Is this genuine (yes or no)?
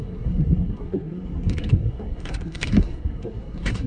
no